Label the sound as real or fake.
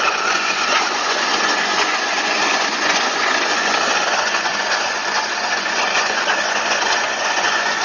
fake